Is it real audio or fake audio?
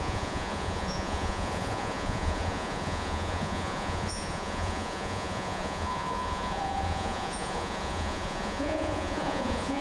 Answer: fake